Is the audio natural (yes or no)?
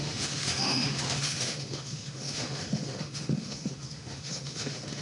no